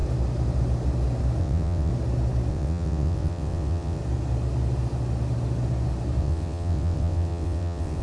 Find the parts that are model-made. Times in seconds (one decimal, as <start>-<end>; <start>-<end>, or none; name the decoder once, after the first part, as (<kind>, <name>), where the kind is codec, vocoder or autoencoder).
1.4-1.9 (vocoder, WaveNeXt); 2.5-4.0; 6.2-8.0